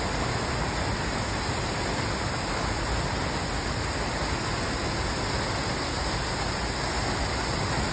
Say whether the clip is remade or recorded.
recorded